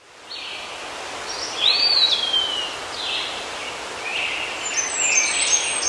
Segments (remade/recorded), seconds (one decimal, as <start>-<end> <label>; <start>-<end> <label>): 0.0-5.9 recorded